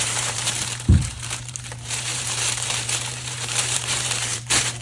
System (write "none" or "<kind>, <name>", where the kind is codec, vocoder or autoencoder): vocoder, BigVGAN v2